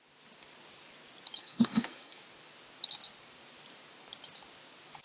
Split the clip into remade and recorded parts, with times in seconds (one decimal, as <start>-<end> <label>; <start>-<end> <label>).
0.0-1.4 recorded; 1.4-2.2 remade; 2.2-5.0 recorded